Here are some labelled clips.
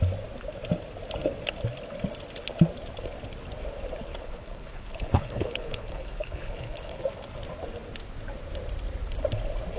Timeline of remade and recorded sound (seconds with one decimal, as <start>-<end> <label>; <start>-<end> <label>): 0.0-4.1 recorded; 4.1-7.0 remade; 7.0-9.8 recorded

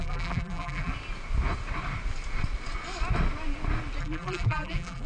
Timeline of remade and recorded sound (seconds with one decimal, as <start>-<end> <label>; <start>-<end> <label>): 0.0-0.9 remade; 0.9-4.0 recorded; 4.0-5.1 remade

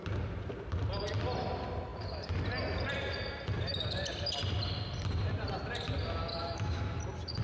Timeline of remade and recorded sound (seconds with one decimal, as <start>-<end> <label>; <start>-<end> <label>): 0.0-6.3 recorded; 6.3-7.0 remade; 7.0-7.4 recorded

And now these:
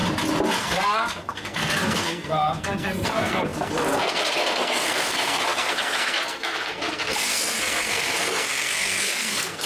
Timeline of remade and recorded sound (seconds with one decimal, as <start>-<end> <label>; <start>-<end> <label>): 0.0-0.6 recorded; 0.6-9.7 remade

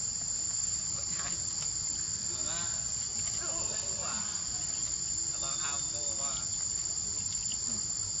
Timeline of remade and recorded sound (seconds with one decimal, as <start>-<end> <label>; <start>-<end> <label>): 0.0-2.7 recorded; 2.7-5.4 remade; 5.4-8.2 recorded

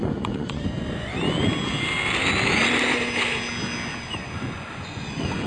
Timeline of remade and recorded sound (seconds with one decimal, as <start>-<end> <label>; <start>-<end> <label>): 0.0-1.1 remade; 1.1-4.0 recorded; 4.0-5.5 remade